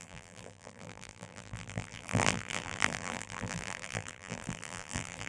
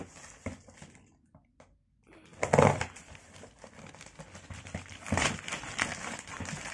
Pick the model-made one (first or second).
first